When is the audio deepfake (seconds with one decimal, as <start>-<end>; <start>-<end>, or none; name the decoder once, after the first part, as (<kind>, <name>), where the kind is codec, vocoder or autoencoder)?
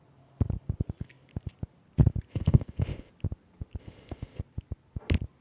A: 2.3-3.1 (codec, ZipCodec); 3.8-4.4